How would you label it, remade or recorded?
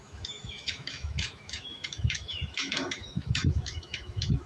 remade